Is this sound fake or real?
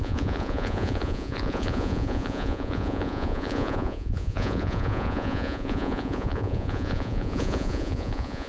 fake